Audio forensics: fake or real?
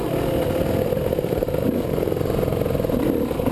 real